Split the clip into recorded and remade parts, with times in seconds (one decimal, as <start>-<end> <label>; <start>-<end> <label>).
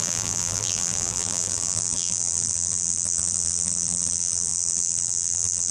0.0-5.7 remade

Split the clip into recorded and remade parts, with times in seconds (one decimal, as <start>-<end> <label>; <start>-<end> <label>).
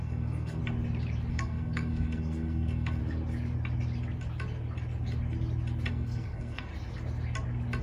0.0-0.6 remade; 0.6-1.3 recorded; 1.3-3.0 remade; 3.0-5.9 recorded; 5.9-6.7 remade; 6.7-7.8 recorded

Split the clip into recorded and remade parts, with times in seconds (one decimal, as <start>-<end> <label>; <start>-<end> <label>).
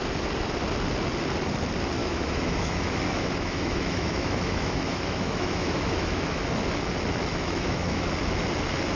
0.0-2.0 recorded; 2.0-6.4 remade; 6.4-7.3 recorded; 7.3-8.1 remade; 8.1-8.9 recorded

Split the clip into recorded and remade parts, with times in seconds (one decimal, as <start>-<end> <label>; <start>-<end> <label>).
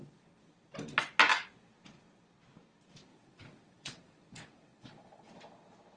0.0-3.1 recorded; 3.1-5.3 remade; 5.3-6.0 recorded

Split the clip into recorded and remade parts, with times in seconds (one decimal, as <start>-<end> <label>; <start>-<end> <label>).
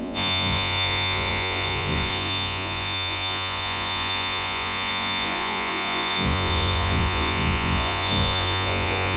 0.0-9.2 remade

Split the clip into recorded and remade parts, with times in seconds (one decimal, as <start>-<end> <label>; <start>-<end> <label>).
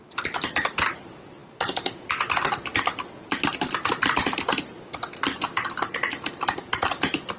0.0-7.4 remade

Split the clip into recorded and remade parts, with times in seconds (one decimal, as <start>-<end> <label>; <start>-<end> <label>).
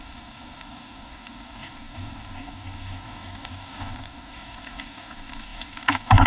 0.0-6.3 remade